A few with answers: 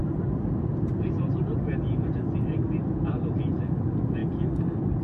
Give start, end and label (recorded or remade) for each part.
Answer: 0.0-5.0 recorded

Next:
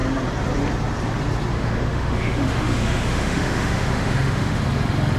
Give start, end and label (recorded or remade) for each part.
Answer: 0.0-1.5 recorded; 1.5-4.6 remade; 4.6-5.2 recorded